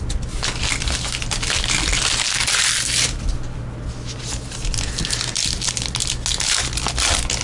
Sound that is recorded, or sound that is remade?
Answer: recorded